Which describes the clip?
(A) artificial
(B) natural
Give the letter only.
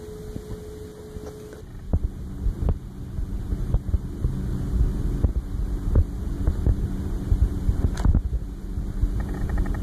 B